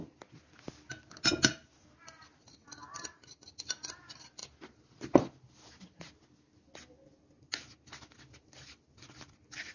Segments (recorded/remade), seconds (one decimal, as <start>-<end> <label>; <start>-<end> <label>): 0.0-9.7 recorded